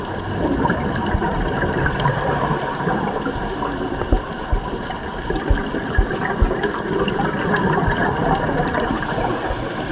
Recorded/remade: remade